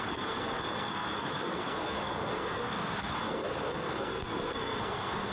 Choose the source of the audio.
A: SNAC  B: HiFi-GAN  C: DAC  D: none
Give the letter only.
A